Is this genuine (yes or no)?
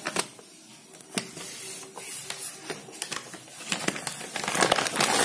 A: yes